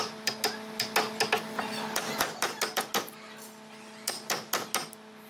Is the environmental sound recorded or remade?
recorded